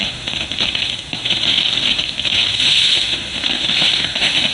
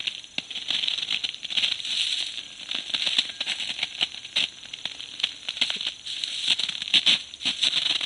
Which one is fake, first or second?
first